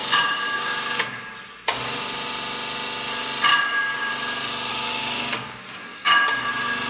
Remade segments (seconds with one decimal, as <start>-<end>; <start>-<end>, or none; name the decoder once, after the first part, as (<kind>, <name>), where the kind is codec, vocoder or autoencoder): 0.0-1.2 (codec, DAC); 3.5-4.1; 4.7-6.1